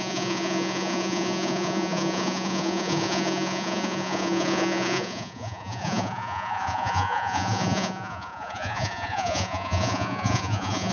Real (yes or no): no